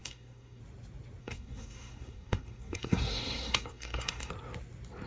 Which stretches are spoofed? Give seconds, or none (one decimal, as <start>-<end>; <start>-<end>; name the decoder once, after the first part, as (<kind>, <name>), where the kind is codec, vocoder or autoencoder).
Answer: 0.0-0.6 (codec, SNAC); 1.2-4.3